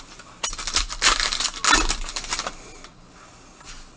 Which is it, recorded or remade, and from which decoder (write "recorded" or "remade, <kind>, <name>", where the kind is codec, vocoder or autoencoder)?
recorded